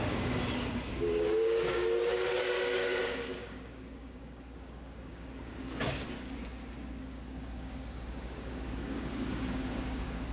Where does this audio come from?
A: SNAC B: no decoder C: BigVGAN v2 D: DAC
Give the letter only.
D